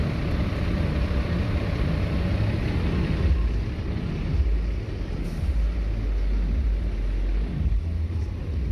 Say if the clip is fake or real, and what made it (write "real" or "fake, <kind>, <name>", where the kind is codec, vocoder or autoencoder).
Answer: real